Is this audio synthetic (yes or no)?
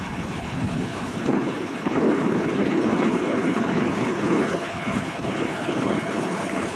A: yes